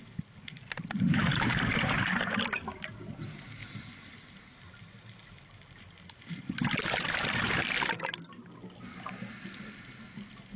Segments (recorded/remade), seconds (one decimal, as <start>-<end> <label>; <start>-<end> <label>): 0.0-10.6 recorded